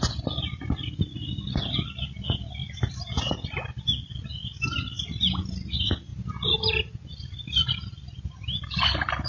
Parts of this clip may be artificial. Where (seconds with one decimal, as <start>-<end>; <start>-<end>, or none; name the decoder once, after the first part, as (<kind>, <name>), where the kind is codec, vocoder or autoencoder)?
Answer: 2.6-3.2 (vocoder, BigVGAN v2)